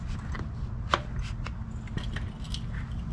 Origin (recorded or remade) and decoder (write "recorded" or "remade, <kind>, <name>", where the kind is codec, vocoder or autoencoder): recorded